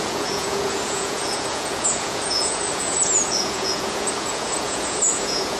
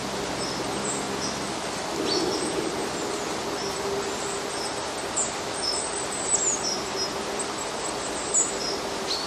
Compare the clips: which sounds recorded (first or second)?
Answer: second